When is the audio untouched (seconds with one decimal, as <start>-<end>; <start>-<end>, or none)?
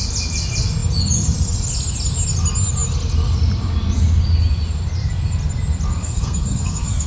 0.0-6.0